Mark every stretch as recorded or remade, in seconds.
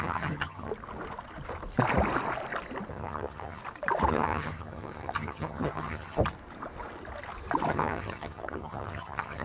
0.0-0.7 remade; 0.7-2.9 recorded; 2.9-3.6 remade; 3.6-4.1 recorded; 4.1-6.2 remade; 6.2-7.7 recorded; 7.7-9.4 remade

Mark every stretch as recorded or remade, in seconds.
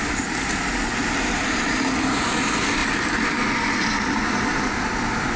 0.0-5.4 recorded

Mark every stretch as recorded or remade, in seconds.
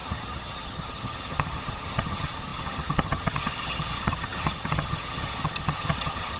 0.0-6.4 remade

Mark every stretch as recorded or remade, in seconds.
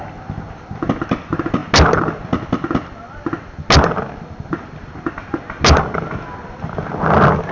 0.0-7.5 recorded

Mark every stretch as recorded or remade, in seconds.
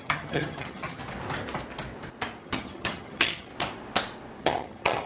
0.0-1.0 remade; 1.0-2.4 recorded; 2.4-3.5 remade; 3.5-4.4 recorded; 4.4-5.1 remade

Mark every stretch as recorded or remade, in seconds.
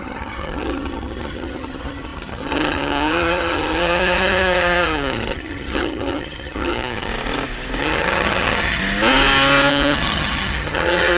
0.0-7.1 remade; 7.1-7.8 recorded; 7.8-8.8 remade; 8.8-9.7 recorded; 9.7-11.2 remade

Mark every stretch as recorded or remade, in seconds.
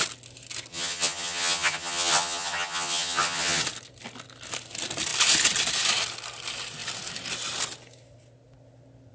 0.0-0.7 recorded; 0.7-3.6 remade; 3.6-9.1 recorded